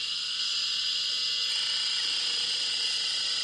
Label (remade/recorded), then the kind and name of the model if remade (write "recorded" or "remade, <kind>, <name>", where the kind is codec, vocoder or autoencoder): recorded